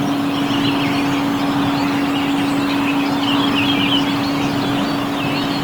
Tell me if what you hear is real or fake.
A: real